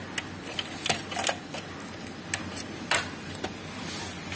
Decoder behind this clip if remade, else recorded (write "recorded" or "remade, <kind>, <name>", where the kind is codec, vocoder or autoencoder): recorded